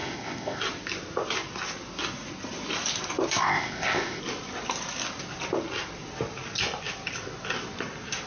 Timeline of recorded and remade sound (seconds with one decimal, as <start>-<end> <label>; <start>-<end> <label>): 0.0-0.6 remade; 0.6-3.4 recorded; 3.4-4.2 remade; 4.2-8.3 recorded